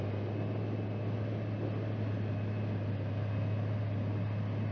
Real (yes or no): yes